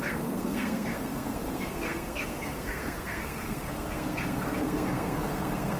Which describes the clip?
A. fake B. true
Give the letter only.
A